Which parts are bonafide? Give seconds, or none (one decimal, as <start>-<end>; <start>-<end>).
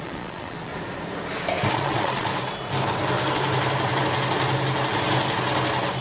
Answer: 0.7-1.7; 2.3-6.0